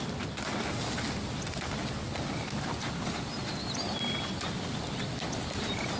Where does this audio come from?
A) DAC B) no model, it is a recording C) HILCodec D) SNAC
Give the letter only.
B